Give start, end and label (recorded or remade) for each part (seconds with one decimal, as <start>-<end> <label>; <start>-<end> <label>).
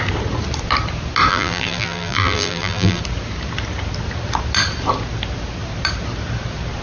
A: 0.0-1.3 recorded; 1.3-3.0 remade; 3.0-6.8 recorded